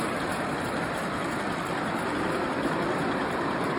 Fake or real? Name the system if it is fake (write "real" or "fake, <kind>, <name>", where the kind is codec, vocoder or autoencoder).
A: real